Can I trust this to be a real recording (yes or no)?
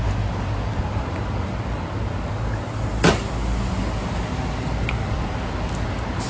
yes